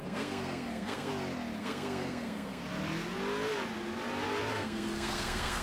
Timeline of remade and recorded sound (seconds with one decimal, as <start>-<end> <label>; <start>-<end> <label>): 0.0-1.1 remade; 1.1-1.6 recorded; 1.6-2.6 remade; 2.6-4.5 recorded; 4.5-5.6 remade